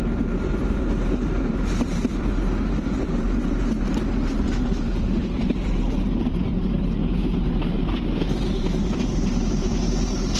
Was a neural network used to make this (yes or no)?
yes